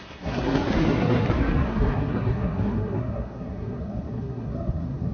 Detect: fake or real fake